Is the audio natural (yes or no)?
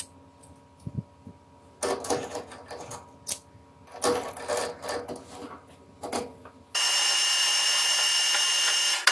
yes